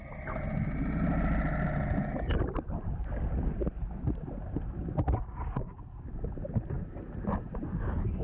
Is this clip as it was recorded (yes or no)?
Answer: yes